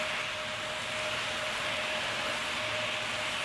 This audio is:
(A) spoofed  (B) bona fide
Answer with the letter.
B